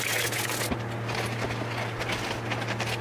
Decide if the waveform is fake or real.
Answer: real